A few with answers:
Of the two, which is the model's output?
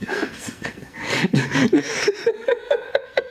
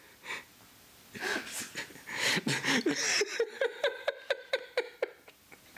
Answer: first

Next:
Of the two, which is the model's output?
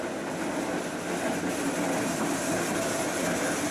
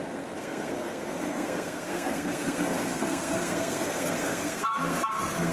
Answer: second